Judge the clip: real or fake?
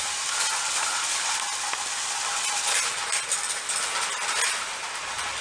real